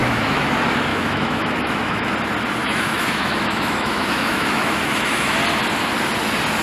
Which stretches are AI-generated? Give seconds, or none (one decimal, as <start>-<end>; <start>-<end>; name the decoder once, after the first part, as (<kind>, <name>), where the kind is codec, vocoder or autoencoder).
0.0-0.5 (autoencoder, DAC-VAE); 0.9-2.1; 2.6-5.3